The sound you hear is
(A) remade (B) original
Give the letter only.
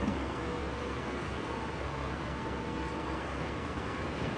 A